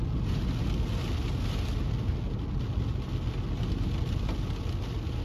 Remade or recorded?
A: recorded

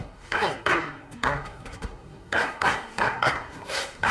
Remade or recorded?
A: remade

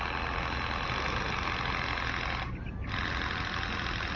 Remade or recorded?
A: recorded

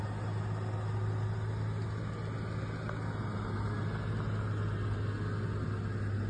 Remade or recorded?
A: recorded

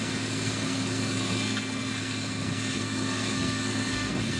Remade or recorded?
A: remade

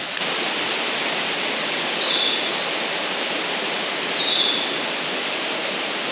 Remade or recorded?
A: recorded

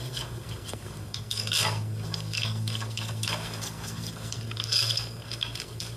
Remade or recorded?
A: remade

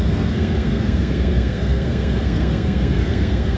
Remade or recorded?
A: remade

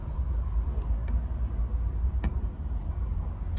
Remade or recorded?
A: recorded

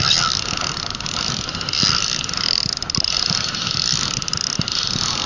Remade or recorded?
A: recorded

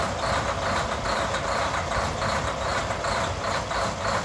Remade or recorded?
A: recorded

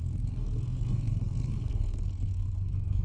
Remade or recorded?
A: remade